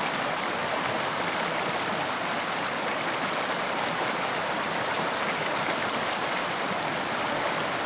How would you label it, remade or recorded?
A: recorded